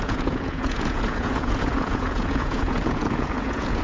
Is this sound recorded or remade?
remade